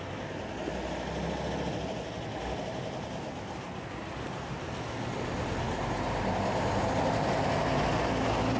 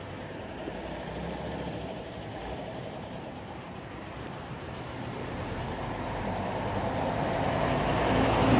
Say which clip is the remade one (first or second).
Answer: second